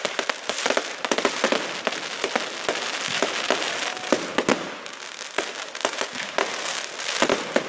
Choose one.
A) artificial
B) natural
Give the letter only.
B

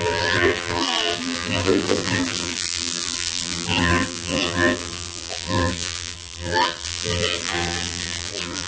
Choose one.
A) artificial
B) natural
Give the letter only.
A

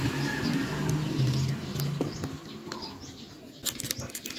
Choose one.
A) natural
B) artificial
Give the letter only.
A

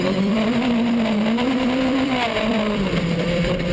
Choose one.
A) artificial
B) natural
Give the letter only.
A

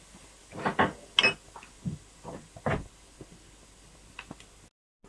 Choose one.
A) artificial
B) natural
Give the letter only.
B